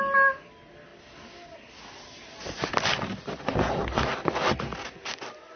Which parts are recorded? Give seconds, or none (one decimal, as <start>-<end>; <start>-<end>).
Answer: 0.0-5.6